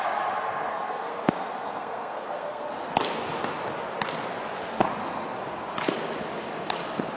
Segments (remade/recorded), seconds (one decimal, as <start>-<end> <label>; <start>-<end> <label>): 0.0-0.7 recorded; 0.7-2.7 remade; 2.7-7.2 recorded